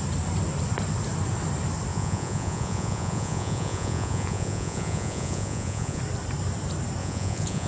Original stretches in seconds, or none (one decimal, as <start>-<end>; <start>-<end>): 0.0-1.9; 6.0-7.0